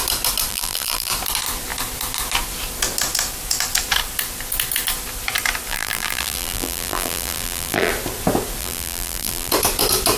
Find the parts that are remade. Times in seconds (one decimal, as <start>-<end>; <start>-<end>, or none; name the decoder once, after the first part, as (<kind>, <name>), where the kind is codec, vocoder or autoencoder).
0.5-1.1 (vocoder, BigVGAN v2); 5.7-7.9; 8.6-9.5